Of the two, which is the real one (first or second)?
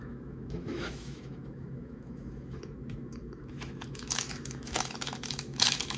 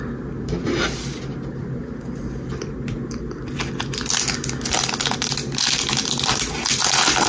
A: second